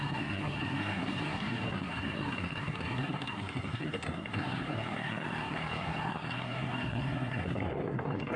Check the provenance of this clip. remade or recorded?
remade